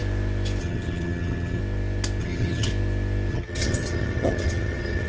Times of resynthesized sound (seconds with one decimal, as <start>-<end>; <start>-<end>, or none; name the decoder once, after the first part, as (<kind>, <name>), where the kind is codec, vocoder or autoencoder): 0.6-1.6 (vocoder, HiFi-GAN); 2.2-2.7; 3.3-5.1